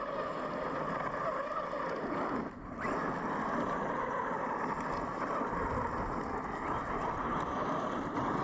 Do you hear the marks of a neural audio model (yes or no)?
no